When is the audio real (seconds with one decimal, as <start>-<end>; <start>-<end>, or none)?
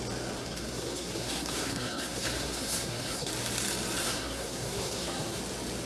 0.0-0.4; 3.3-4.0; 5.4-5.9